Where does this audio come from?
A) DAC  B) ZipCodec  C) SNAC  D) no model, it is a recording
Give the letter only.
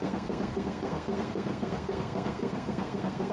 C